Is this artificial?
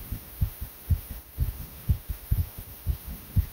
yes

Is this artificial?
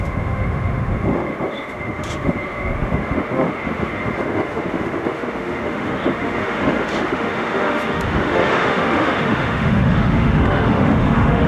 yes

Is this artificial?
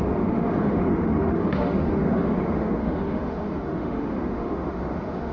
yes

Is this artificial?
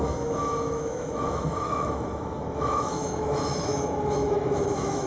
yes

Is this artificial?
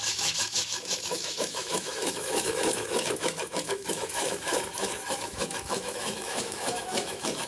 yes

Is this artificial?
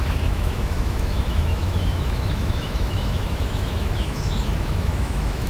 yes